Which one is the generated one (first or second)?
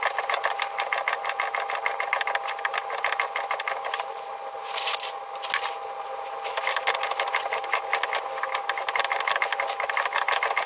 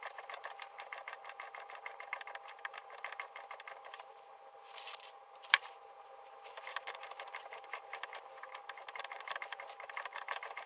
second